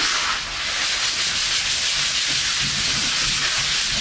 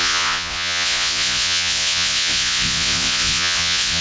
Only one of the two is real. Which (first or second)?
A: first